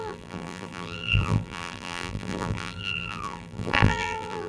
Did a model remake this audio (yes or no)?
yes